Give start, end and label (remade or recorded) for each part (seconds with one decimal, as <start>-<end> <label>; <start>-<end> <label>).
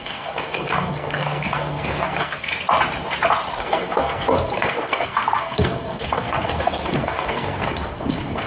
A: 0.0-2.5 remade; 2.5-3.6 recorded; 3.6-8.5 remade